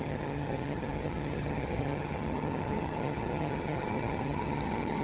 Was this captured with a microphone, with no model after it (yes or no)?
no